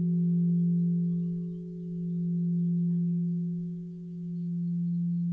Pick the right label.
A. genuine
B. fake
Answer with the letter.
B